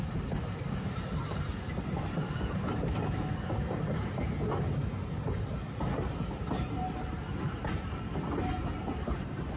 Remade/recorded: recorded